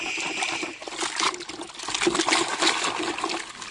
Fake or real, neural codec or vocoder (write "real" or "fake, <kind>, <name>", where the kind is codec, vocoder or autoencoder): real